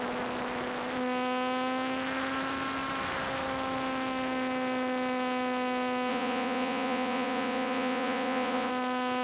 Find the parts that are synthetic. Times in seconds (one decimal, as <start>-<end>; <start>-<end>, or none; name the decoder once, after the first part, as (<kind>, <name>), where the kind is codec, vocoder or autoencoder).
6.1-8.7 (vocoder, Vocos)